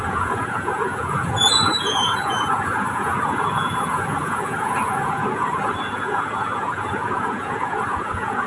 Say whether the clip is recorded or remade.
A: remade